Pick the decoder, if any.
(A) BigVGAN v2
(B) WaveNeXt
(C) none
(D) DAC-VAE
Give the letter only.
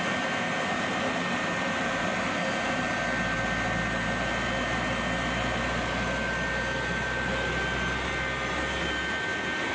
C